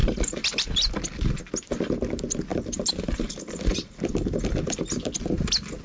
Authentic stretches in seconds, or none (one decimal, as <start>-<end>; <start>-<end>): 1.4-2.5; 5.1-5.8